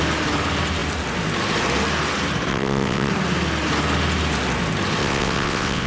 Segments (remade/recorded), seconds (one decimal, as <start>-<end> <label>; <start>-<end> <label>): 0.0-2.5 recorded; 2.5-3.1 remade; 3.1-5.0 recorded; 5.0-5.9 remade